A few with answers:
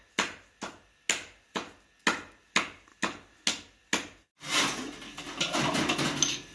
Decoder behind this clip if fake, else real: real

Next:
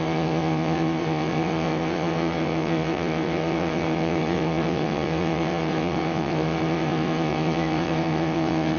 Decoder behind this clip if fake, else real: fake, vocoder, WaveNeXt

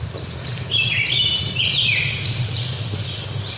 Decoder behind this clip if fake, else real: real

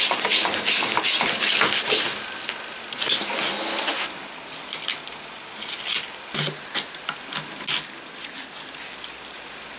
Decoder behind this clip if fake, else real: real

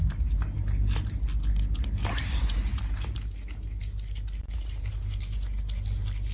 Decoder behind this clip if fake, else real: real